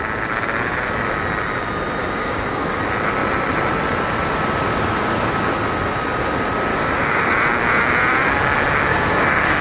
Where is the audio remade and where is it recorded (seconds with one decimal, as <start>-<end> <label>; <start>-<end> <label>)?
0.0-2.0 recorded; 2.0-2.8 remade; 2.8-6.7 recorded; 6.7-7.3 remade; 7.3-8.9 recorded; 8.9-9.6 remade